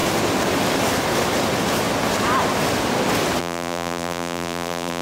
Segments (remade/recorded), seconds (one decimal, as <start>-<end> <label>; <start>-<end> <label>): 0.0-3.4 recorded; 3.4-5.0 remade